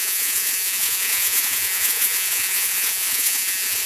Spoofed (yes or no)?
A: yes